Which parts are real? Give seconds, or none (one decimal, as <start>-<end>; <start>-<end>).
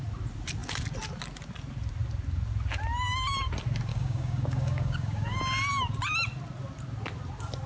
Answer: 0.0-3.9; 5.4-7.7